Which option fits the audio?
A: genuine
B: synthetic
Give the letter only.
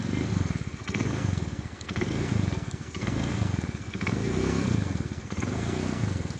B